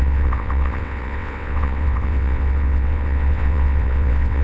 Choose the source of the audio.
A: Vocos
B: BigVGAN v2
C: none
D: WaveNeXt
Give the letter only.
D